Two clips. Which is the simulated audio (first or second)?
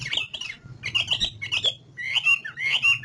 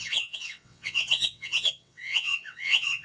second